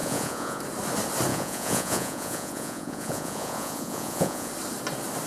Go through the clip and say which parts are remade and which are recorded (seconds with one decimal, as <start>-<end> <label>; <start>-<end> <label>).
0.0-0.6 remade; 0.6-1.3 recorded; 1.3-4.5 remade; 4.5-5.3 recorded